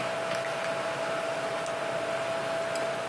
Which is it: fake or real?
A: real